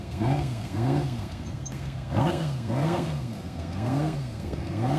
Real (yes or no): no